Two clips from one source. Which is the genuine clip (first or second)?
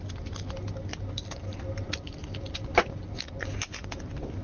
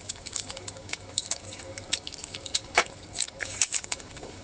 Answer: first